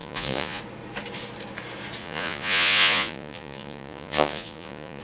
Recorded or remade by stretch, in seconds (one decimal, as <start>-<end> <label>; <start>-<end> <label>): 0.0-0.6 remade; 0.6-2.0 recorded; 2.0-5.0 remade